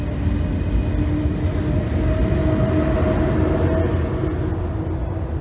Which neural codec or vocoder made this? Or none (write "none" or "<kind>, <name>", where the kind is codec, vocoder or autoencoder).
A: none